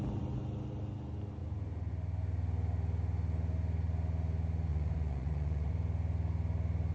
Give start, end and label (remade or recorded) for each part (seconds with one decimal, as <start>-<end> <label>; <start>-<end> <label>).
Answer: 0.0-4.7 recorded; 4.7-5.7 remade; 5.7-6.9 recorded